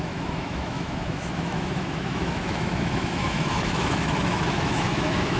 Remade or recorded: remade